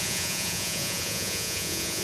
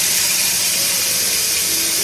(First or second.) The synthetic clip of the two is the first